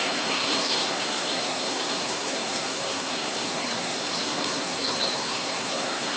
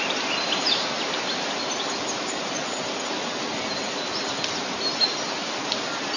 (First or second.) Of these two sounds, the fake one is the first